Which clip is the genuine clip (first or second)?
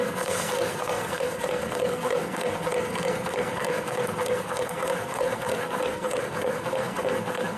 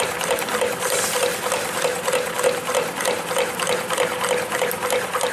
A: second